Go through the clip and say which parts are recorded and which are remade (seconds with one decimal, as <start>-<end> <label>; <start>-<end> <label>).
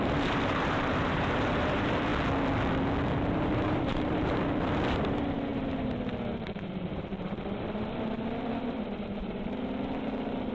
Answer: 0.0-2.1 remade; 2.1-3.3 recorded; 3.3-10.5 remade